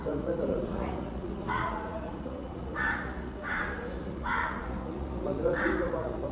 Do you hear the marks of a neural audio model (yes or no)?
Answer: yes